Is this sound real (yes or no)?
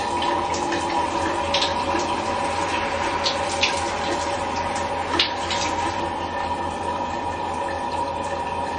yes